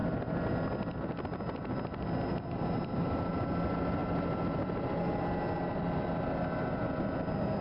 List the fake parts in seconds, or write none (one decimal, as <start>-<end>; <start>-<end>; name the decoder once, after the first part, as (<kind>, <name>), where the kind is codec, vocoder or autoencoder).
none